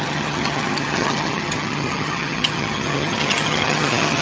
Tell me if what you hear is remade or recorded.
remade